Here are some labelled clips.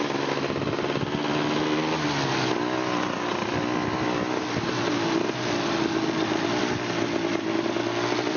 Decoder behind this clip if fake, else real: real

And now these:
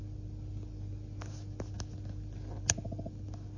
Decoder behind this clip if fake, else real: real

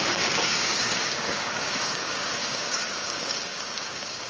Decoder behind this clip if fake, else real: fake, codec, DAC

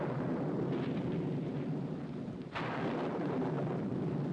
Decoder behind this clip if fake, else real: fake, vocoder, BigVGAN v2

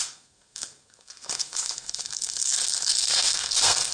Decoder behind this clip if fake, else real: fake, codec, SNAC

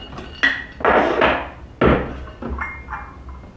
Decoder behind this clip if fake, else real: real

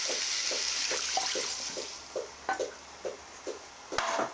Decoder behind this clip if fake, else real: real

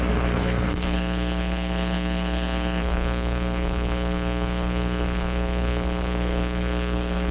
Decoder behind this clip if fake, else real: fake, codec, SNAC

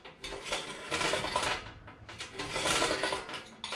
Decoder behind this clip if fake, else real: real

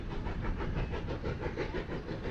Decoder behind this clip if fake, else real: real